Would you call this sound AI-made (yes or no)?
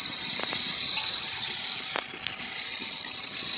no